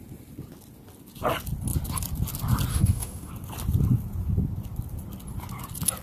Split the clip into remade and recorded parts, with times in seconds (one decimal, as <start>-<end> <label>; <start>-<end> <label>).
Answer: 0.0-2.7 recorded; 2.7-3.3 remade; 3.3-6.0 recorded